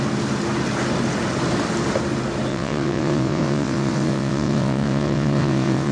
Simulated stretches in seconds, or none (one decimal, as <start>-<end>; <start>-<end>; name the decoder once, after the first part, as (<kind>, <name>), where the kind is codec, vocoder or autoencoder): 2.5-5.9 (vocoder, WaveNeXt)